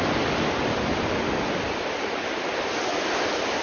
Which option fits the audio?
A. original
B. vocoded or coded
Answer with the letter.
A